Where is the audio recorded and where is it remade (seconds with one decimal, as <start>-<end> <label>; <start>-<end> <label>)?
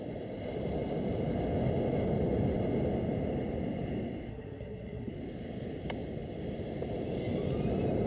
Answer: 0.0-4.3 recorded; 4.3-5.1 remade; 5.1-8.1 recorded